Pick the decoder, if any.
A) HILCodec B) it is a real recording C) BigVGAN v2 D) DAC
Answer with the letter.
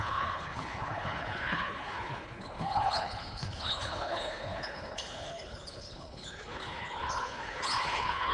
A